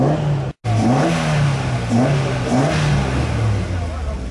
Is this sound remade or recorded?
recorded